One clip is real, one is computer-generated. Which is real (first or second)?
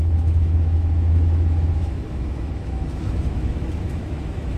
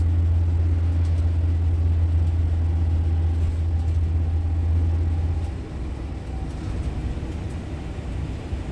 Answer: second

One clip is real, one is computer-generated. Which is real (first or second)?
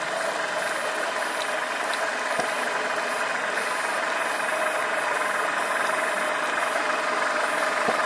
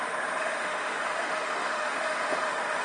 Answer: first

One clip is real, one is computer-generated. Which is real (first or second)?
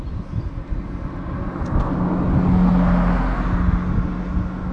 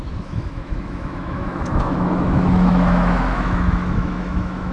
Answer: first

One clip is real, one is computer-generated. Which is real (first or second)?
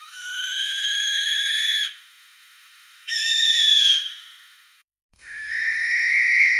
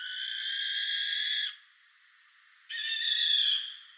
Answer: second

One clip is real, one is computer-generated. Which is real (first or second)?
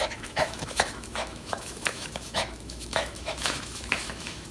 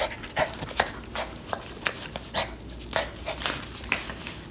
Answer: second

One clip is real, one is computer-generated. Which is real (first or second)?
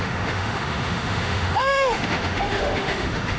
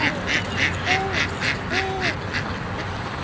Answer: second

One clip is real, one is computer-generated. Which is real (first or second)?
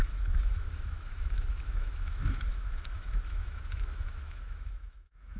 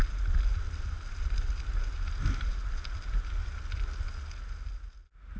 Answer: second